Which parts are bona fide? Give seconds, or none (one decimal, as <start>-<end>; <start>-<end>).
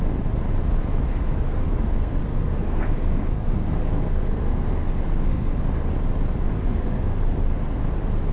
0.0-1.1; 5.6-6.5; 7.8-8.3